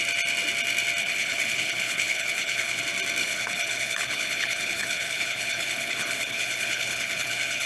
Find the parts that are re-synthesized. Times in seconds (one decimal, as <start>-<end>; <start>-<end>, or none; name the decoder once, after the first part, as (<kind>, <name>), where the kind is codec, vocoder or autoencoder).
1.0-2.8 (codec, HILCodec); 3.2-7.7